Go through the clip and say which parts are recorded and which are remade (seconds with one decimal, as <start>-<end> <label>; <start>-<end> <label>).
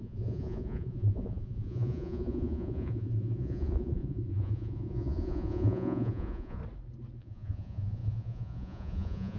0.0-6.6 remade; 6.6-7.2 recorded; 7.2-9.4 remade